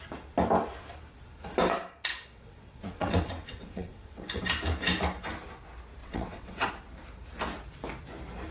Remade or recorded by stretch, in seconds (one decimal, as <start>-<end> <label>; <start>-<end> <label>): 0.0-2.1 recorded; 2.1-4.4 remade; 4.4-6.0 recorded; 6.0-6.7 remade; 6.7-8.5 recorded